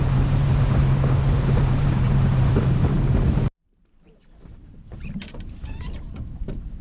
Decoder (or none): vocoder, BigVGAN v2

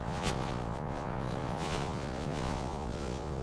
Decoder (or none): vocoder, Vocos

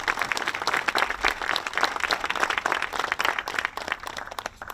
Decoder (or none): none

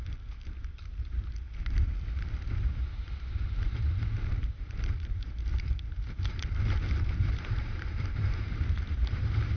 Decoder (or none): vocoder, BigVGAN v2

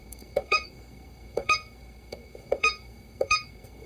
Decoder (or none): codec, SNAC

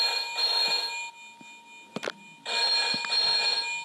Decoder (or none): none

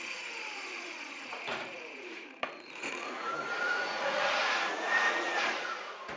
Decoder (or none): vocoder, Vocos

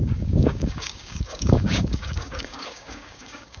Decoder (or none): codec, DAC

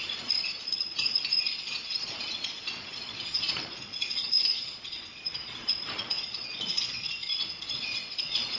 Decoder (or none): vocoder, Vocos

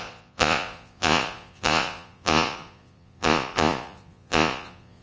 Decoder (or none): vocoder, Vocos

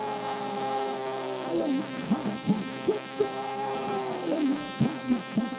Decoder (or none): codec, SNAC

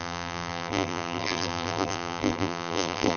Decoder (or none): vocoder, BigVGAN v2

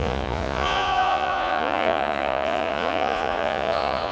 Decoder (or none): vocoder, Vocos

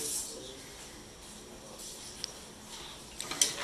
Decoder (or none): none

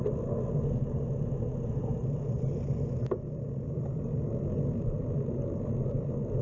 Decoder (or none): none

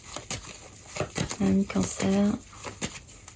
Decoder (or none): none